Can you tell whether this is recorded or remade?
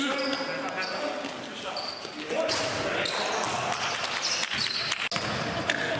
recorded